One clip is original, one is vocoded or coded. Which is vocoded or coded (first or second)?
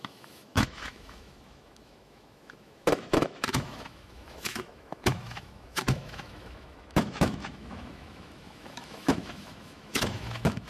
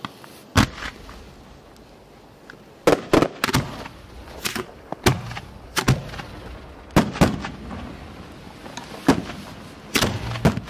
first